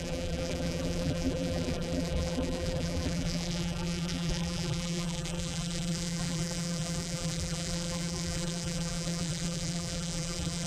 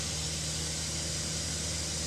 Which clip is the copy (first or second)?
first